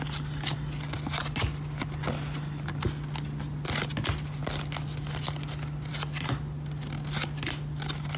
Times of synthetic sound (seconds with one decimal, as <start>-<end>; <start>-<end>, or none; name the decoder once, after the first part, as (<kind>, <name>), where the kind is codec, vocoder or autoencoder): none